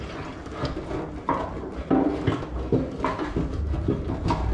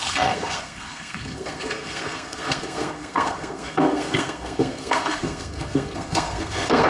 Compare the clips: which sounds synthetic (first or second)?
second